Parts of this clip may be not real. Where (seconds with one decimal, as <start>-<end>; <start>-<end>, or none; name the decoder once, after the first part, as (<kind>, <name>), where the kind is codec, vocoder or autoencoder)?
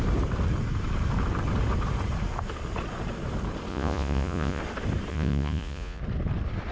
3.7-4.6 (vocoder, Vocos); 5.1-6.0